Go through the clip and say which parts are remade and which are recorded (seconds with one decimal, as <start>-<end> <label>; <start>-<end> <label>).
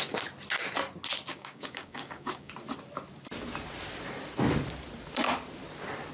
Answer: 0.0-1.3 recorded; 1.3-2.5 remade; 2.5-6.1 recorded